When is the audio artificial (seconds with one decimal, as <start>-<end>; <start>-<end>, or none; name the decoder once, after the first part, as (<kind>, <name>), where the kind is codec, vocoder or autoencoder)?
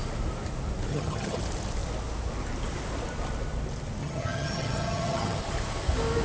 0.9-1.4 (vocoder, HiFi-GAN); 4.0-5.4